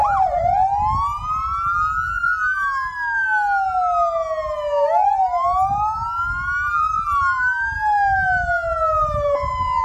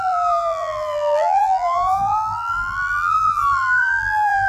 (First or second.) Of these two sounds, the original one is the first